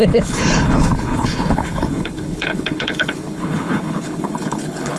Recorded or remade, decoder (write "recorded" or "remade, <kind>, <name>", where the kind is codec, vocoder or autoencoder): remade, codec, HILCodec